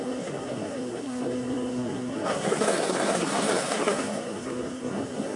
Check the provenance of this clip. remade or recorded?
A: remade